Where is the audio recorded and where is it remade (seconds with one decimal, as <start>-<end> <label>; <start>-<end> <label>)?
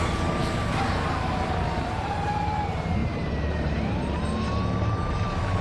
0.0-3.0 recorded; 3.0-4.2 remade; 4.2-5.6 recorded